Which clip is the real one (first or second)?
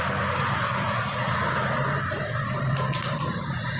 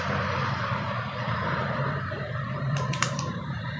first